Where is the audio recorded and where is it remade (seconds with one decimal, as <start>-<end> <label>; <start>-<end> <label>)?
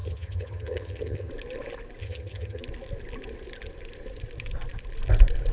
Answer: 0.0-1.3 remade; 1.3-2.0 recorded; 2.0-2.6 remade; 2.6-5.5 recorded